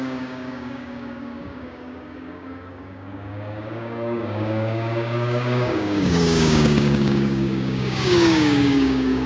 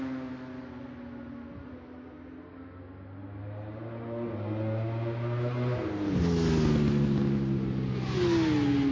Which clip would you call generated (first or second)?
first